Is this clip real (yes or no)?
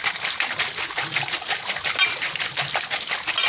yes